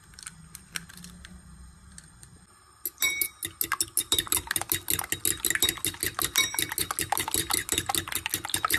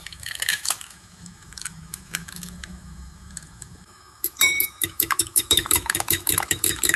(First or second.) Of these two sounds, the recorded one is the first